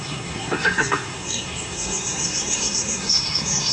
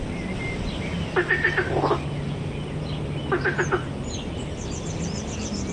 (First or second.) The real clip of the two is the second